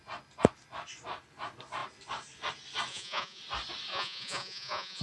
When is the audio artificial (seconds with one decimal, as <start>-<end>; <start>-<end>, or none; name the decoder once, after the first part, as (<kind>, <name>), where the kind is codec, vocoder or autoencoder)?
2.9-3.4 (vocoder, Vocos); 3.9-5.0